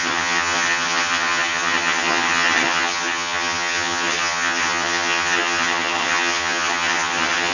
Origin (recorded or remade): remade